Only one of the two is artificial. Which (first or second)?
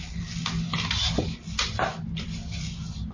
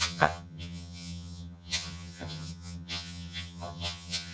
second